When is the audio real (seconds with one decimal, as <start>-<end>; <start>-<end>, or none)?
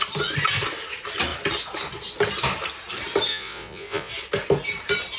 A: 0.0-3.3; 4.1-5.2